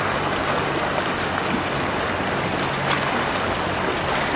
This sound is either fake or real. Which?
real